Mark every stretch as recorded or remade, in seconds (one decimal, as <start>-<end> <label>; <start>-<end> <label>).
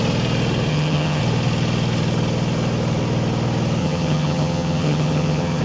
0.0-0.7 recorded; 0.7-1.2 remade; 1.2-3.8 recorded; 3.8-5.6 remade